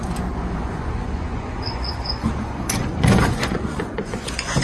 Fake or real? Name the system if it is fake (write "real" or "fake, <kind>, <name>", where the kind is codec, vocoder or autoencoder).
fake, vocoder, Vocos